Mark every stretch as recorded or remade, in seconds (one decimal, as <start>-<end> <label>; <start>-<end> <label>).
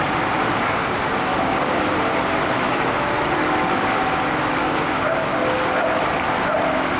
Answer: 0.0-1.3 recorded; 1.3-1.8 remade; 1.8-4.6 recorded; 4.6-5.4 remade; 5.4-7.0 recorded